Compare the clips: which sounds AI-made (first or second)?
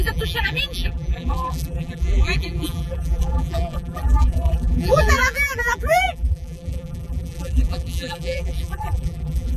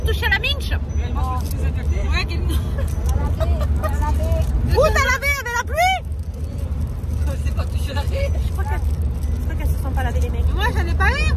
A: first